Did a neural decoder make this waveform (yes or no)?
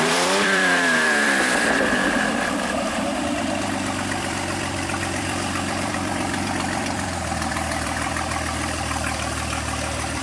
yes